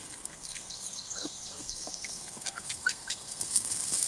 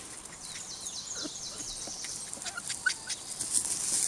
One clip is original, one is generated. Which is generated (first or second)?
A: first